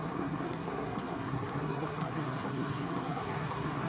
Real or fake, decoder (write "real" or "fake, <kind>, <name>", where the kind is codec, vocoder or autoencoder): fake, codec, SNAC